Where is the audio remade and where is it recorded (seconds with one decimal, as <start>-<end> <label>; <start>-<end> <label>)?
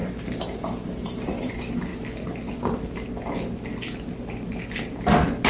0.0-1.5 remade; 1.5-5.5 recorded